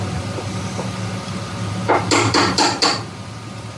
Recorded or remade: recorded